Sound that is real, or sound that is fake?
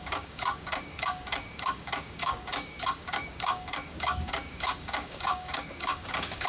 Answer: fake